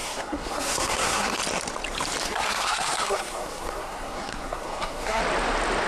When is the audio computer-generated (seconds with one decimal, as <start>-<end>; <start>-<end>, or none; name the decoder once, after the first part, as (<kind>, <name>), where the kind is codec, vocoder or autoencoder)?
0.0-1.4 (codec, SNAC); 2.2-5.2